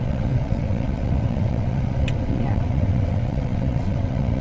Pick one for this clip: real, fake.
fake